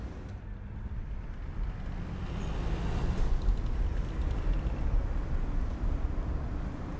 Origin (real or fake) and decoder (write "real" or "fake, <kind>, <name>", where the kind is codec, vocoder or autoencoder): real